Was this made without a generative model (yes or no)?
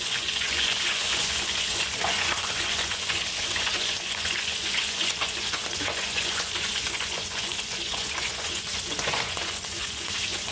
no